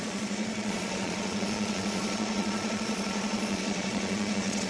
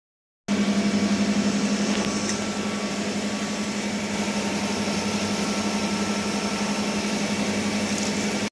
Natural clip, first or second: second